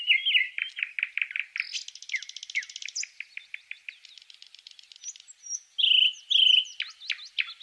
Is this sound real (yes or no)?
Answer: yes